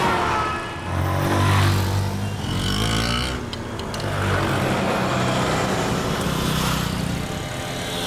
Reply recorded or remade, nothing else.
recorded